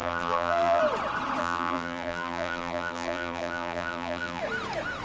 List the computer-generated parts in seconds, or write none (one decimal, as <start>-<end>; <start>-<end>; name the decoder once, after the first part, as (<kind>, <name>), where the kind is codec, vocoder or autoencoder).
0.0-0.8 (vocoder, BigVGAN v2); 1.4-4.4